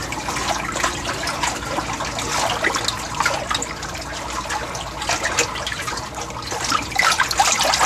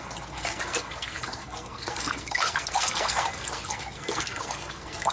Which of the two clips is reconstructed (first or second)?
second